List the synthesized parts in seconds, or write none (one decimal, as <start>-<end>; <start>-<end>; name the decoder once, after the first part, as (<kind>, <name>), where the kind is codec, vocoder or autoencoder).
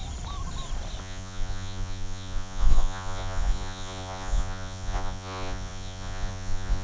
1.0-6.8 (vocoder, Vocos)